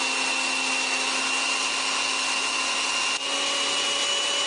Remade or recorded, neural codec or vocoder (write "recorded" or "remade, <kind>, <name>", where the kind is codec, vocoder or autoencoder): recorded